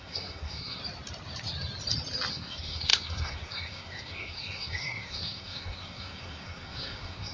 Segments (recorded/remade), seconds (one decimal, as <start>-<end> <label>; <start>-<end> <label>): 0.0-0.8 remade; 0.8-2.3 recorded; 2.3-7.3 remade